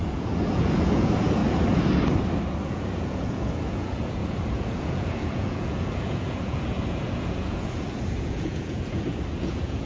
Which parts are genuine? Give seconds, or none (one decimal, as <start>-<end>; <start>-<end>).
1.4-2.6